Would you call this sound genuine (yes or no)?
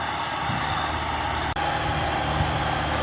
yes